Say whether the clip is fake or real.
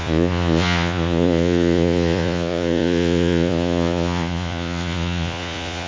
fake